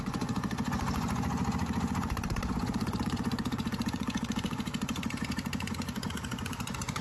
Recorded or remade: remade